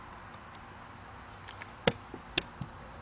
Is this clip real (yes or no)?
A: yes